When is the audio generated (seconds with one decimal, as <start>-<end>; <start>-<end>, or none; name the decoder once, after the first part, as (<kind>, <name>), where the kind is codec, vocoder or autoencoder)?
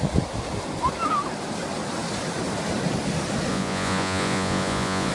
3.5-5.1 (vocoder, Vocos)